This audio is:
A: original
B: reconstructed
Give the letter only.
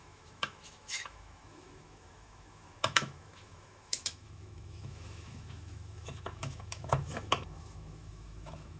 B